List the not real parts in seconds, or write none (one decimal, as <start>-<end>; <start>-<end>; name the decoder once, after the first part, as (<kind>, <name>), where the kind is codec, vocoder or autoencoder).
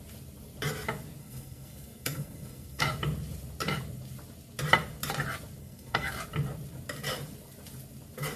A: 1.2-2.8 (codec, SNAC); 5.6-6.1